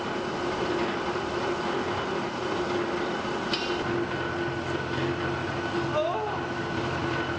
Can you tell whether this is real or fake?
real